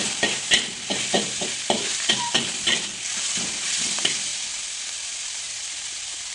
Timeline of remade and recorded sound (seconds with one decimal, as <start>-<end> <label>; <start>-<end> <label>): 0.0-6.3 remade